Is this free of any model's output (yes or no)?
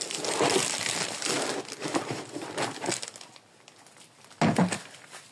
yes